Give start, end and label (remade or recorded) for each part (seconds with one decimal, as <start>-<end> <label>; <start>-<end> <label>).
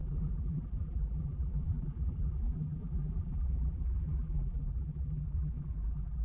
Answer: 0.0-6.2 remade